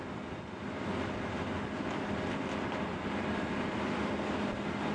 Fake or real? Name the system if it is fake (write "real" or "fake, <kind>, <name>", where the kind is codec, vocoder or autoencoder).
real